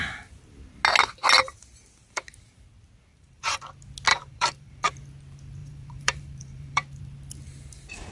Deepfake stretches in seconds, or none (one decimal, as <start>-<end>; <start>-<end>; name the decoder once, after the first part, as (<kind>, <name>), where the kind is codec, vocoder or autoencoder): 3.1-3.6 (vocoder, BigVGAN v2); 4.1-4.9; 5.6-7.0